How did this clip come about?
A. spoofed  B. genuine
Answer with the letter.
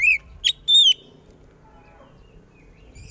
B